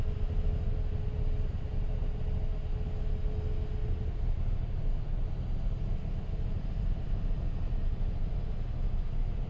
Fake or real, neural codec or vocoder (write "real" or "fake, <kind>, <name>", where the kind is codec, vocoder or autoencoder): real